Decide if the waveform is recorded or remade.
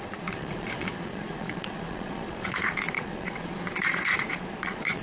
remade